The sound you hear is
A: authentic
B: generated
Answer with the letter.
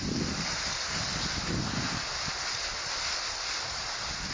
A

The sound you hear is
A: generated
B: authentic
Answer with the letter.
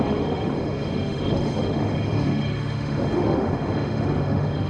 A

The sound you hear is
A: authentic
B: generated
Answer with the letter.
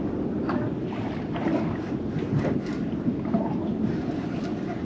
A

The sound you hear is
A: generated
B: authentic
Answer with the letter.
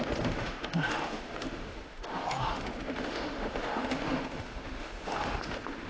A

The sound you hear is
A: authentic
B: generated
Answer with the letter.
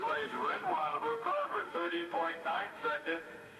B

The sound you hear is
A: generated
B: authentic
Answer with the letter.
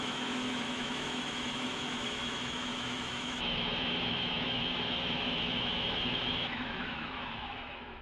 A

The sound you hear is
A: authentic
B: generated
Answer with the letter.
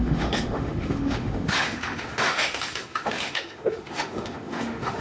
B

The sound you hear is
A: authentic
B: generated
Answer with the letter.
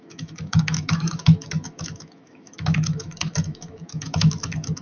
B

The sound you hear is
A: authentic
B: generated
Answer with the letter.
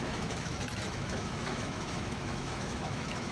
B